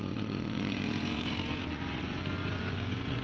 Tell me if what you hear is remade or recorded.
remade